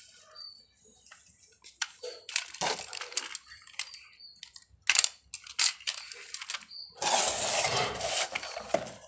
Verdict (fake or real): real